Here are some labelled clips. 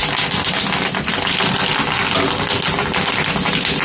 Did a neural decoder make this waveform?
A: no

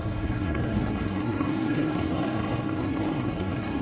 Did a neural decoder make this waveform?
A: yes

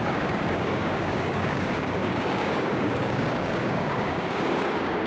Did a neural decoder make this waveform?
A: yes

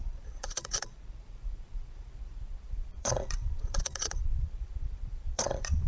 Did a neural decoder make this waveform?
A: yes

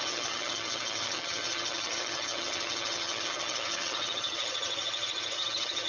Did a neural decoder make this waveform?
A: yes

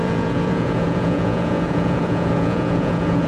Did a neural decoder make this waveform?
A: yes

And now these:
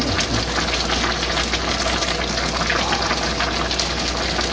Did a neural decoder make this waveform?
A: no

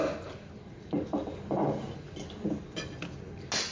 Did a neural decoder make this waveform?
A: no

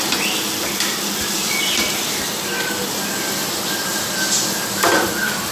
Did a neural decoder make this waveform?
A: no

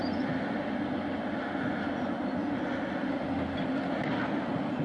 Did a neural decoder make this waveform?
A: no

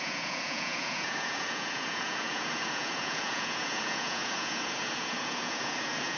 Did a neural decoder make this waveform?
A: yes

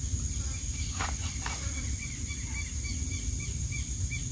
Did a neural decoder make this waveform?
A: no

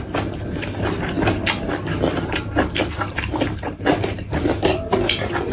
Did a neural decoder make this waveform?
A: no